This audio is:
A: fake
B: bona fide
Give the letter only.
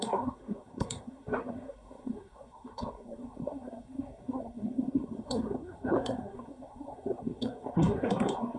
A